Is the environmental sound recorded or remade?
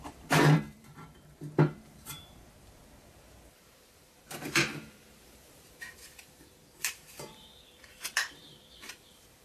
remade